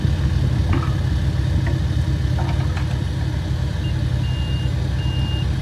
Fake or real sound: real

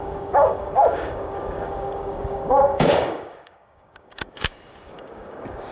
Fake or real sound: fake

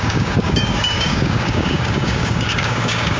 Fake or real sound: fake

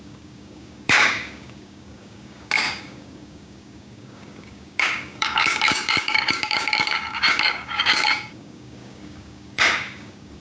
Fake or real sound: fake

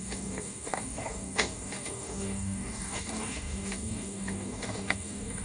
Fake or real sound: fake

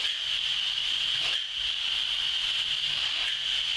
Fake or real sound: real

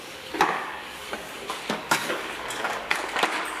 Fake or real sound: fake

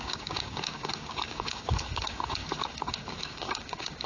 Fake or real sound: fake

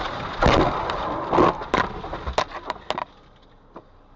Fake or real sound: real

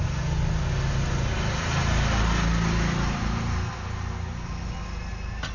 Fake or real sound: real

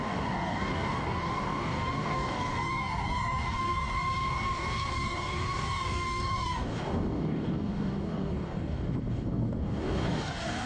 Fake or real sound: fake